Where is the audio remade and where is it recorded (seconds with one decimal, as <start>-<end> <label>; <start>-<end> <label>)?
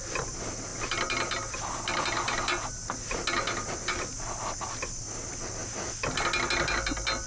0.0-7.3 recorded